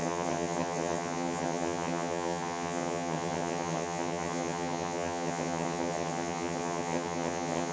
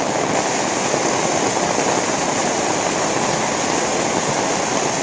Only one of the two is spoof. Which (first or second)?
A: first